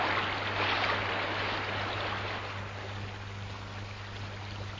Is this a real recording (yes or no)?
yes